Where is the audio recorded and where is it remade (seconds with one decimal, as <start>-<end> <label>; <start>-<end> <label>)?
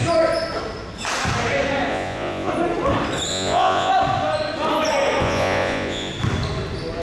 0.0-1.9 recorded; 1.9-2.5 remade; 2.5-3.3 recorded; 3.3-3.9 remade; 3.9-5.2 recorded; 5.2-6.1 remade; 6.1-7.0 recorded